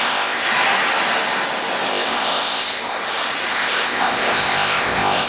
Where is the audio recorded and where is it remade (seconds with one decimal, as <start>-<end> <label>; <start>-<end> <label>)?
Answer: 0.0-0.4 remade; 0.4-1.9 recorded; 1.9-3.0 remade; 3.0-3.5 recorded; 3.5-5.3 remade